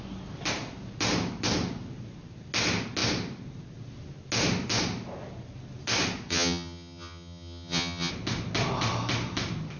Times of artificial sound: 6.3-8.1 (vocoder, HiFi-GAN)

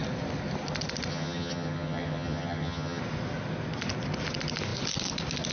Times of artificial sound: 1.1-3.0 (vocoder, HiFi-GAN)

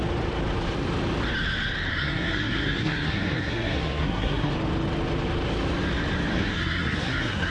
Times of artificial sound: 1.9-4.5 (codec, SNAC); 6.3-7.5

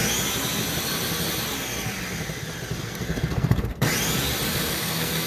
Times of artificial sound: 2.8-3.9 (codec, SNAC); 4.5-5.3

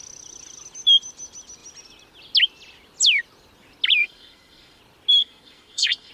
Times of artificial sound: 4.0-4.8 (codec, SNAC); 5.2-6.1

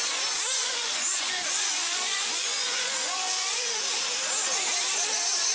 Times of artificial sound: 0.5-3.8 (vocoder, Vocos)

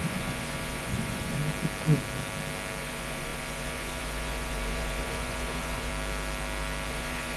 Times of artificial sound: 0.0-1.4 (vocoder, Vocos); 2.8-5.9; 6.9-7.4

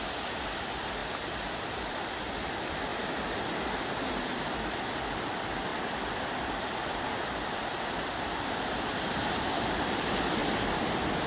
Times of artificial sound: 0.0-2.9 (vocoder, BigVGAN v2); 4.0-10.4